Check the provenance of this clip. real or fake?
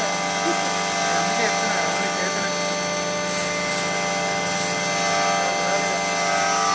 real